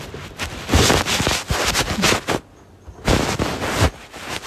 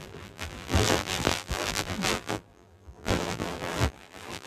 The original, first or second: first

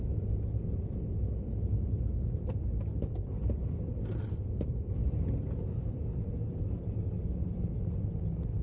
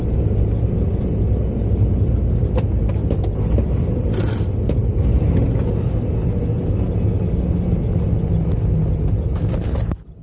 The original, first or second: second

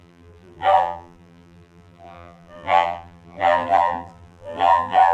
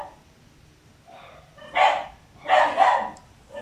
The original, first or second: second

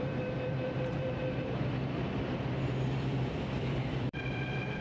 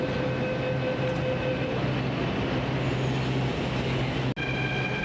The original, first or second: second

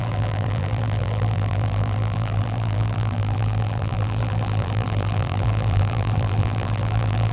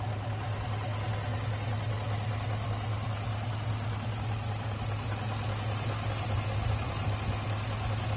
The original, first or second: second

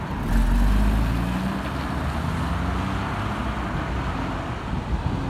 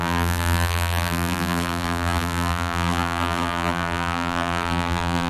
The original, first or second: first